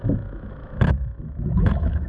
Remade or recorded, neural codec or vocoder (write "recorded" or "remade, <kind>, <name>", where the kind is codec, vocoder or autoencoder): remade, autoencoder, DAC-VAE